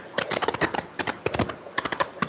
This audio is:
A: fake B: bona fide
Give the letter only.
B